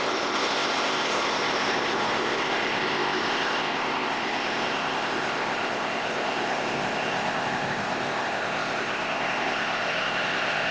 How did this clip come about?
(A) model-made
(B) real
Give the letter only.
A